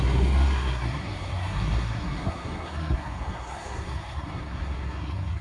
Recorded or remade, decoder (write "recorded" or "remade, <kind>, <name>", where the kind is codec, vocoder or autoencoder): remade, codec, SNAC